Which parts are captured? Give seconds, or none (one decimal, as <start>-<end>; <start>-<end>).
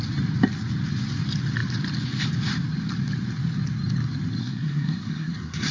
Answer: 0.0-4.4